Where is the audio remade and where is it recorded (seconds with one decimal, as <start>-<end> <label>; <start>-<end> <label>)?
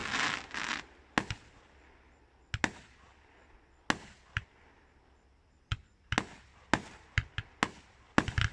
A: 0.0-8.5 recorded